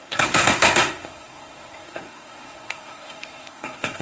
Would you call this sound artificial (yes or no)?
yes